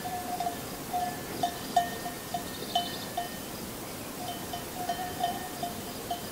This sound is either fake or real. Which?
real